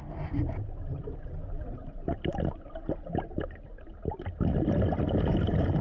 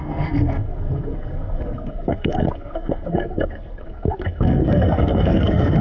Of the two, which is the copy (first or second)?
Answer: second